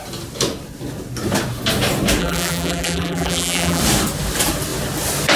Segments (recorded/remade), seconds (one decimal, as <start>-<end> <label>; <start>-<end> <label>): 0.0-2.2 recorded; 2.2-3.8 remade; 3.8-5.4 recorded